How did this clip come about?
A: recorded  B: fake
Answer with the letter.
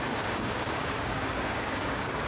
B